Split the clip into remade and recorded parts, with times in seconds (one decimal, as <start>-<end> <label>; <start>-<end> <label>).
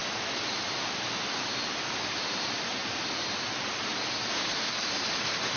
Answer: 0.0-2.1 recorded; 2.1-2.8 remade; 2.8-4.1 recorded; 4.1-5.6 remade